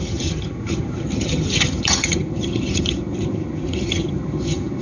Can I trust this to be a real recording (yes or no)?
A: no